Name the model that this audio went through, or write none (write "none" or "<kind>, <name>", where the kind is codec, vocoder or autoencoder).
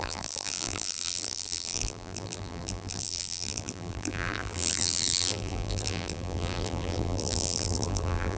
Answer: vocoder, BigVGAN v2